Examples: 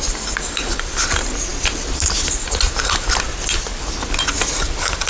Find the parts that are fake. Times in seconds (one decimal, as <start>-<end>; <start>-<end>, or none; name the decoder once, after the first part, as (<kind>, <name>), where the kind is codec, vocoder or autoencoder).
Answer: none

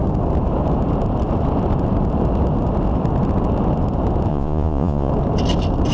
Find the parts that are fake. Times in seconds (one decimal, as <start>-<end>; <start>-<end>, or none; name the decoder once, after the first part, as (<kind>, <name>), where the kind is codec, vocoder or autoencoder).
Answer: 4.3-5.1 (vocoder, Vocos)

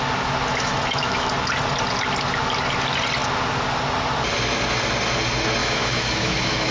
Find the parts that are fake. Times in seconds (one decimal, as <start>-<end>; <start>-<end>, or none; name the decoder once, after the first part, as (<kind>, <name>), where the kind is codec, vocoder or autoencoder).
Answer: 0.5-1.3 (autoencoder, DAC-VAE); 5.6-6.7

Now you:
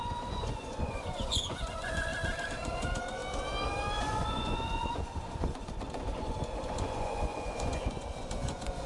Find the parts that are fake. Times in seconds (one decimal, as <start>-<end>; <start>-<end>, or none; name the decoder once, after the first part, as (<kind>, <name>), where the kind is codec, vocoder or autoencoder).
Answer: 0.0-2.1 (vocoder, Vocos); 2.7-3.2; 4.0-8.9

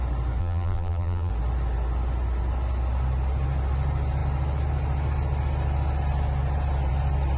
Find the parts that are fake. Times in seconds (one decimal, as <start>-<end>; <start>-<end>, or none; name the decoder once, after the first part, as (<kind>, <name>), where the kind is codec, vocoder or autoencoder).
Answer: 0.4-1.3 (vocoder, BigVGAN v2)

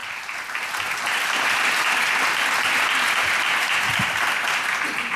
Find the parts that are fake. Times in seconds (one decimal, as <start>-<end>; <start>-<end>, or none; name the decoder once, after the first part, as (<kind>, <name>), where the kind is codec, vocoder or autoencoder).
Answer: 3.2-3.9 (vocoder, BigVGAN v2)